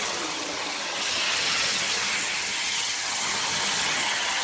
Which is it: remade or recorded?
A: remade